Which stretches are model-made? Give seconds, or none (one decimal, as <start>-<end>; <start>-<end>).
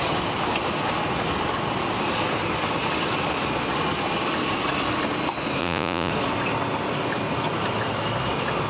5.6-6.1